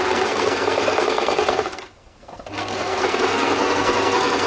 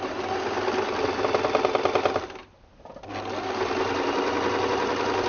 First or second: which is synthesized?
first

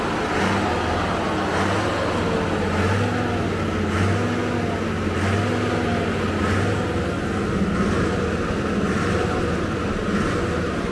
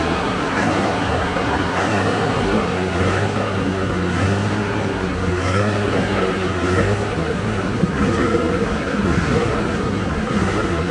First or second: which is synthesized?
second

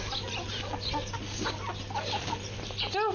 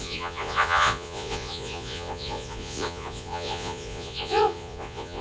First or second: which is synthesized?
second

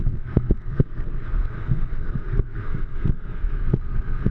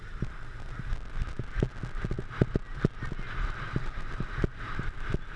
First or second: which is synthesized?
first